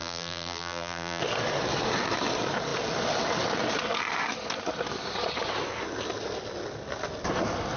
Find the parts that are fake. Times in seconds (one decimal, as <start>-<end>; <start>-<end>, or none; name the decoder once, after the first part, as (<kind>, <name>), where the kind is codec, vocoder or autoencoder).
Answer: 0.0-1.2 (vocoder, BigVGAN v2)